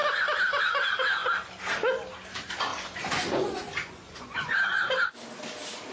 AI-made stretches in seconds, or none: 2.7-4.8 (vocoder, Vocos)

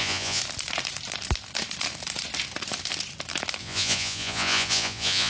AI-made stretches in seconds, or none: 0.0-0.4 (vocoder, Vocos); 3.6-5.3

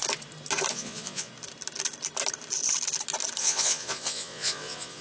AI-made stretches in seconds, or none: 0.7-1.3 (vocoder, Vocos); 3.4-5.0

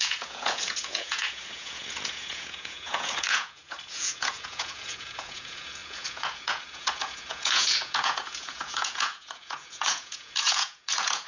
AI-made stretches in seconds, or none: 0.0-11.3 (vocoder, Vocos)

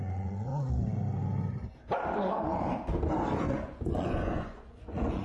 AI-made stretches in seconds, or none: 0.0-0.5 (vocoder, Vocos); 3.4-5.2

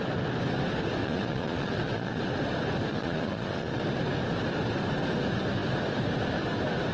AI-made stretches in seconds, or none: 1.0-2.2 (vocoder, Vocos); 2.9-3.8

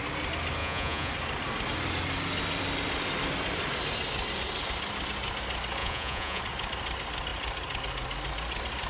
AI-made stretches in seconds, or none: 0.6-1.1 (vocoder, Vocos); 5.8-6.4

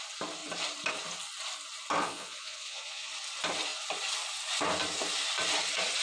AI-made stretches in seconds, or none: 2.0-3.1 (vocoder, Vocos)